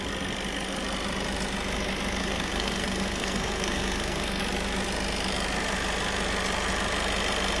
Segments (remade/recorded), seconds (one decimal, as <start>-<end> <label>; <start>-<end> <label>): 0.0-2.2 recorded; 2.2-4.4 remade; 4.4-7.6 recorded

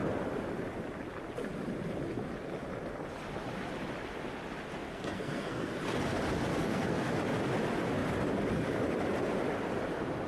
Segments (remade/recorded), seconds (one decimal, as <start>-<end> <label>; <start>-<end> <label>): 0.0-4.8 recorded; 4.8-5.7 remade; 5.7-6.5 recorded; 6.5-7.1 remade; 7.1-10.3 recorded